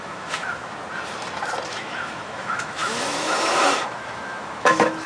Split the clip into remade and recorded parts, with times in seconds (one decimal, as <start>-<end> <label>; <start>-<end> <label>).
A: 0.0-0.8 remade; 0.8-1.7 recorded; 1.7-5.1 remade